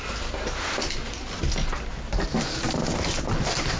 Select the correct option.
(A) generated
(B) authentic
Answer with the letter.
B